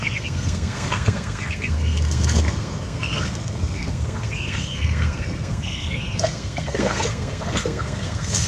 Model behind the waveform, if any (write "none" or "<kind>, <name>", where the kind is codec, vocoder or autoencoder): codec, SNAC